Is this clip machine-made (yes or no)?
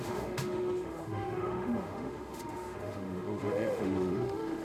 yes